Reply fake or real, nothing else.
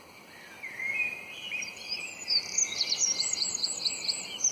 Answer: real